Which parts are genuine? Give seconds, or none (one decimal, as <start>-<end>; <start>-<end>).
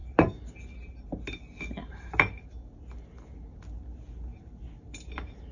1.0-1.8; 2.5-4.6